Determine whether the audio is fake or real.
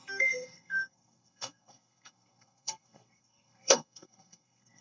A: fake